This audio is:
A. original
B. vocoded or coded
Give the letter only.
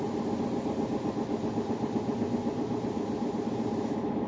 A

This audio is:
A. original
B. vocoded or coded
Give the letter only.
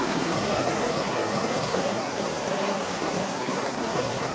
B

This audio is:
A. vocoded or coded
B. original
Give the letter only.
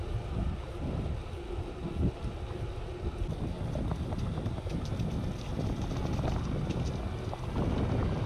B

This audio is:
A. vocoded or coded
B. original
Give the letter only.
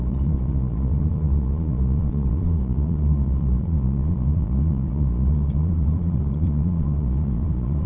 A